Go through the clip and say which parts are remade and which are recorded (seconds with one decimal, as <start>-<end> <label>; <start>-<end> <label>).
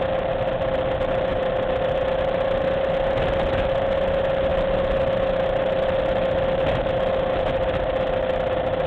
0.0-8.9 recorded